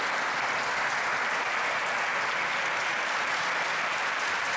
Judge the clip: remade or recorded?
recorded